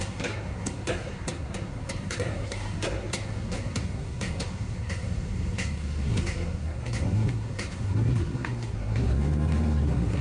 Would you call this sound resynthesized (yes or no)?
yes